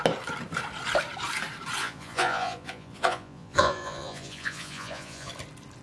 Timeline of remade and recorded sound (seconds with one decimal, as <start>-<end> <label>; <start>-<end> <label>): 0.0-1.8 recorded; 1.8-5.3 remade; 5.3-5.8 recorded